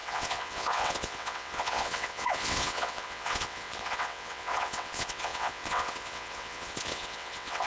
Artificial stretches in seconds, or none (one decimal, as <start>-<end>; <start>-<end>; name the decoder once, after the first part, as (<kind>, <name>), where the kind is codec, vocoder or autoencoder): 0.0-7.7 (vocoder, WaveNeXt)

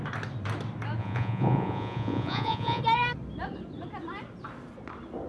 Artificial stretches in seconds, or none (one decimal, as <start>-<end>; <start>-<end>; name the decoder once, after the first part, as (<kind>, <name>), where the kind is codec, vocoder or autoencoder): 1.0-2.8 (vocoder, Vocos)

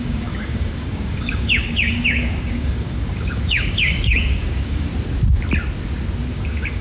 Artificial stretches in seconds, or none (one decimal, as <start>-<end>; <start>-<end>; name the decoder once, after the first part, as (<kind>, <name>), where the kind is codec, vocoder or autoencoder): 0.0-4.9 (codec, DAC); 6.3-6.8

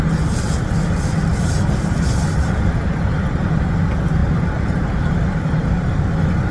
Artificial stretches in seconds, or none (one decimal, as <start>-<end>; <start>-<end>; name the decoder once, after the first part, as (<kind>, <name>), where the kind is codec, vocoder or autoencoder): 1.3-3.6 (vocoder, BigVGAN v2); 4.2-6.0

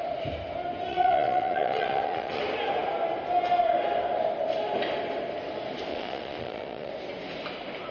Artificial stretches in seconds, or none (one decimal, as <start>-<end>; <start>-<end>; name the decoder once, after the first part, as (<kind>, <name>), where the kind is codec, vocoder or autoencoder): 0.9-2.4 (vocoder, Vocos); 5.9-6.9

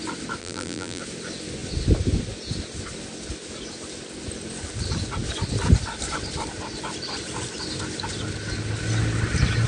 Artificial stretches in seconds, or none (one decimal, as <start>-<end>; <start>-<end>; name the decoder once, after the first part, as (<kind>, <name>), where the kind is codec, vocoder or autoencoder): 0.4-1.0 (vocoder, BigVGAN v2)

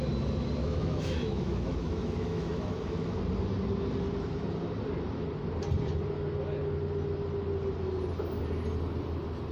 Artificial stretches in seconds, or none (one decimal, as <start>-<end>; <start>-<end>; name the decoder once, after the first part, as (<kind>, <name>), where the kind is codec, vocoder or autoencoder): 0.6-3.2 (autoencoder, DAC-VAE)

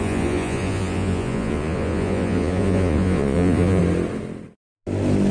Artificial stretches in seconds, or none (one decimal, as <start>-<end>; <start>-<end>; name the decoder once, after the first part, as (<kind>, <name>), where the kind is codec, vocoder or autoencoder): 0.0-3.8 (vocoder, Vocos)